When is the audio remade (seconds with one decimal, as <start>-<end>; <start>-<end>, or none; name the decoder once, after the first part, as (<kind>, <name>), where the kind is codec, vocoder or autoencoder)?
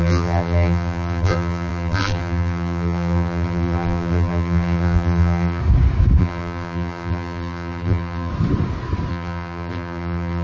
0.0-5.6 (vocoder, BigVGAN v2); 6.2-8.3; 9.1-10.4